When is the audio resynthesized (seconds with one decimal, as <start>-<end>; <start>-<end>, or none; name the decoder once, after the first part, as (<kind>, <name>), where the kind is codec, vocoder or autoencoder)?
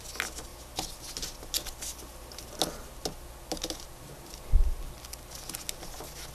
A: none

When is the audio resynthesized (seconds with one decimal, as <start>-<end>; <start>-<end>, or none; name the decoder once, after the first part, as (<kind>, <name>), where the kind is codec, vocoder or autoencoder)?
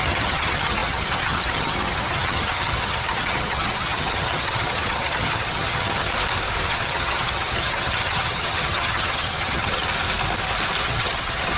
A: 0.0-6.1 (vocoder, HiFi-GAN); 6.7-9.9; 10.8-11.6